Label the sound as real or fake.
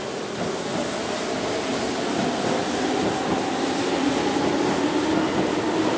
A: real